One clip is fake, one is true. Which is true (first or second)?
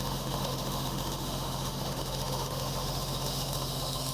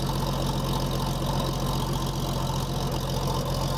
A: second